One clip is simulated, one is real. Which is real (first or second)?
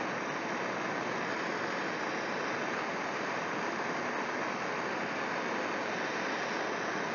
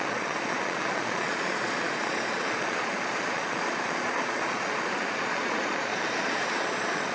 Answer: first